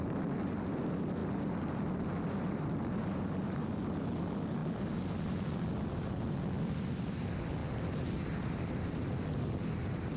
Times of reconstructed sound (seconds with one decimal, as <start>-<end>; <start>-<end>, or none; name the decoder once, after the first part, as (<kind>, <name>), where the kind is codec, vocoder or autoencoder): 7.6-9.7 (vocoder, BigVGAN v2)